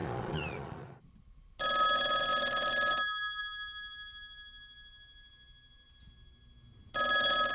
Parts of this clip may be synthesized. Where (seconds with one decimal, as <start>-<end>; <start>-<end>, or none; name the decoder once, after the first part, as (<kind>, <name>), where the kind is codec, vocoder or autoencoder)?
0.0-1.0 (vocoder, Vocos)